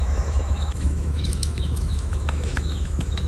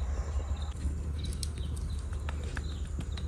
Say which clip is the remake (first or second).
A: first